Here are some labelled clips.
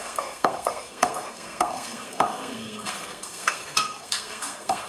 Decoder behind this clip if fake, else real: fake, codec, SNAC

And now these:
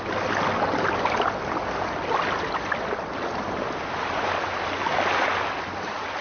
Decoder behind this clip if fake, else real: real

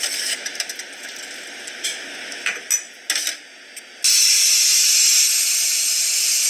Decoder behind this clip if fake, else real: real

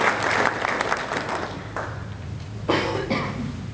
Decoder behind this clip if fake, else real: real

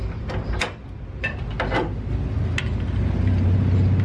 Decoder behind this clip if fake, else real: real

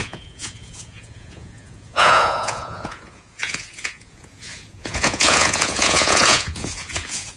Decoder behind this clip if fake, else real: fake, vocoder, Vocos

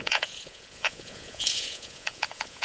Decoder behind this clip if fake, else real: fake, vocoder, Vocos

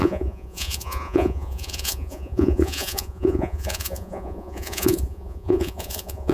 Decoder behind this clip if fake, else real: fake, vocoder, Vocos